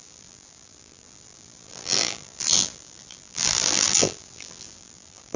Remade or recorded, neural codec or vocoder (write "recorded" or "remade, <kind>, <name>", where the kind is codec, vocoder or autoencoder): remade, vocoder, BigVGAN v2